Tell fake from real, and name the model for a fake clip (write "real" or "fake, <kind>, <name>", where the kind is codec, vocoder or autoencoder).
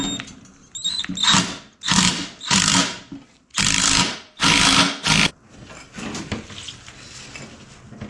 real